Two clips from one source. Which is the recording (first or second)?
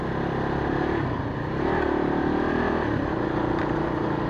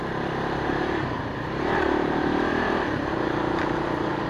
first